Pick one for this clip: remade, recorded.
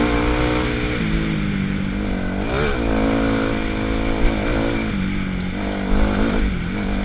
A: recorded